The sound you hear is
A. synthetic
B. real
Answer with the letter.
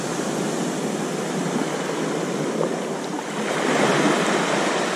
B